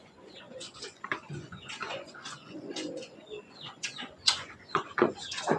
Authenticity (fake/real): fake